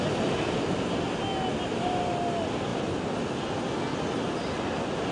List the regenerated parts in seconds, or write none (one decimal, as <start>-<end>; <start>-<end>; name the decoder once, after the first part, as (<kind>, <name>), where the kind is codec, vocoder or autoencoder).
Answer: none